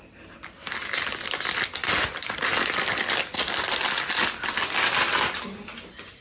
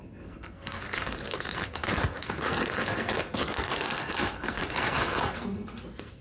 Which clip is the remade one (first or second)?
second